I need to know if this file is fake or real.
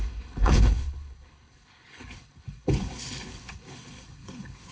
fake